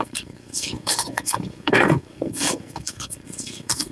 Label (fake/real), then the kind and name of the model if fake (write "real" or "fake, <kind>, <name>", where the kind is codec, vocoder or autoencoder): fake, codec, SNAC